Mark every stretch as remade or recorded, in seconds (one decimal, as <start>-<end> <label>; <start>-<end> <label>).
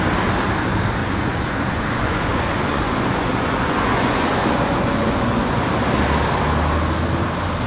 0.0-1.0 recorded; 1.0-5.6 remade; 5.6-7.7 recorded